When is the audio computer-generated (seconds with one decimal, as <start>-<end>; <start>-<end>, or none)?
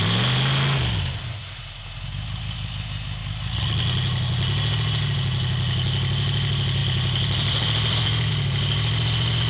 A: 3.2-3.7; 6.8-8.3